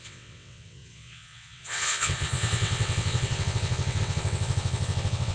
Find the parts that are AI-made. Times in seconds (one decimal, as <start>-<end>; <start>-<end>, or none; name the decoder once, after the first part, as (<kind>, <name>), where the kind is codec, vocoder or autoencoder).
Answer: 0.0-5.3 (vocoder, WaveNeXt)

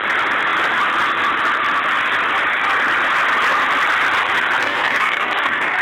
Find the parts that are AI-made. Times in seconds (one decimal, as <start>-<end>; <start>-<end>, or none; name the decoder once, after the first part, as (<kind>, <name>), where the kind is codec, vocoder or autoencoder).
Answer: 4.6-5.8 (codec, DAC)

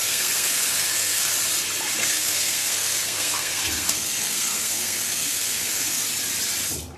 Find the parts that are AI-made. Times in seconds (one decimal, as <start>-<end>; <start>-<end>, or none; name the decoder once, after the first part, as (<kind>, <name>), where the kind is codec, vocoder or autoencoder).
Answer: 0.0-1.3 (codec, SNAC); 2.0-6.0

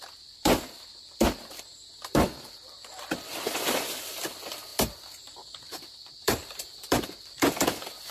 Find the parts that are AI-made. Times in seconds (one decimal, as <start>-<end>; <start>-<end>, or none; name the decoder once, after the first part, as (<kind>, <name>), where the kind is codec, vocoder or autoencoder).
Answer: 0.0-8.1 (vocoder, BigVGAN v2)

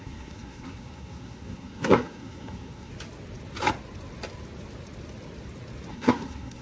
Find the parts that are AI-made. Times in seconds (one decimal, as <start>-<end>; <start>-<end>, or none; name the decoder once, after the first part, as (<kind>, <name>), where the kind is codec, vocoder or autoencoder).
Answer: 0.0-2.9 (codec, SNAC); 5.9-6.6